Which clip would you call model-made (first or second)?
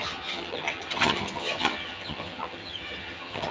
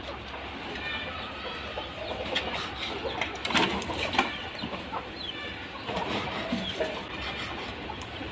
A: first